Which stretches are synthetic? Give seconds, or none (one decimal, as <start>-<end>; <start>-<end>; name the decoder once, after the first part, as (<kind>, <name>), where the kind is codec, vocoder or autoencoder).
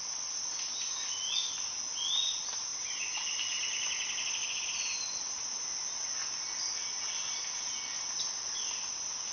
none